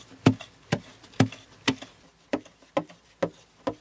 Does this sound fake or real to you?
real